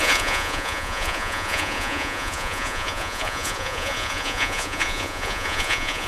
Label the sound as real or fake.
fake